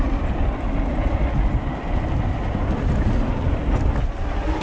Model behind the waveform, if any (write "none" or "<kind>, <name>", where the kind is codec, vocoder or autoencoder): none